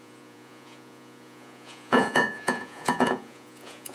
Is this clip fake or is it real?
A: fake